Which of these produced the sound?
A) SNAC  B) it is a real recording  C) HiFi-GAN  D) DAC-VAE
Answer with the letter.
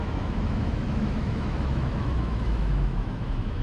D